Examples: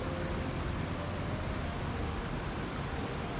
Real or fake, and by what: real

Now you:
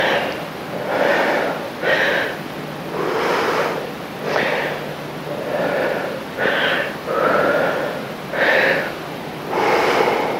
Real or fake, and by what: real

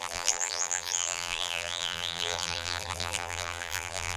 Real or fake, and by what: fake, vocoder, BigVGAN v2